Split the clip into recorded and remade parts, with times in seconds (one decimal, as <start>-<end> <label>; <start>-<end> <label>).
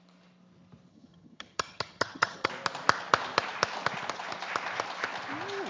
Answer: 0.0-0.9 recorded; 0.9-2.5 remade; 2.5-5.7 recorded